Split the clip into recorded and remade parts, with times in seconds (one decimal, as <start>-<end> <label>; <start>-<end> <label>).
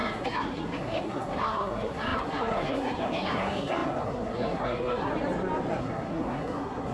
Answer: 0.0-5.1 remade; 5.1-5.8 recorded; 5.8-6.9 remade